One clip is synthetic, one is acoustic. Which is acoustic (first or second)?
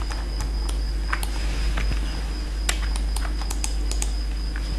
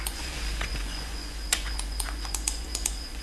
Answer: first